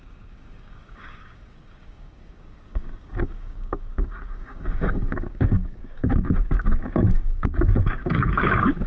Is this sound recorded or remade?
remade